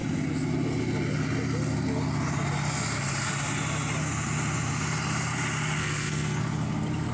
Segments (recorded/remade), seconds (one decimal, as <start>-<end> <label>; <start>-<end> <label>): 0.0-5.8 recorded; 5.8-6.4 remade; 6.4-7.1 recorded